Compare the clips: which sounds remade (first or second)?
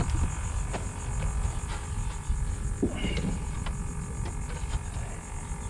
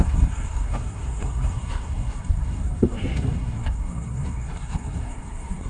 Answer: second